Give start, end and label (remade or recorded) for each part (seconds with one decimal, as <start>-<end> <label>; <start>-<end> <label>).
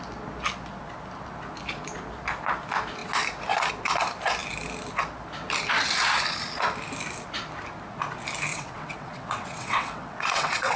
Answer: 0.0-8.5 recorded; 8.5-10.8 remade